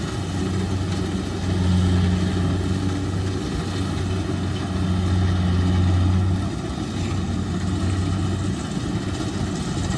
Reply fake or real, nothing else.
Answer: real